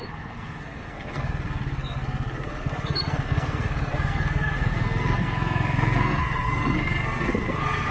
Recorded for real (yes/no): no